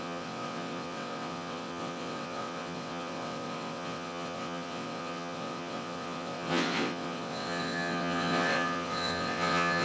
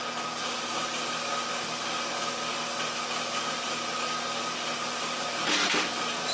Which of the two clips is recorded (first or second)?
second